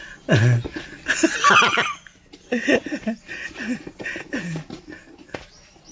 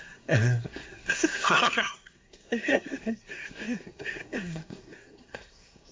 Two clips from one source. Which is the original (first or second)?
first